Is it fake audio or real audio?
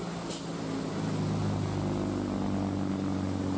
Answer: real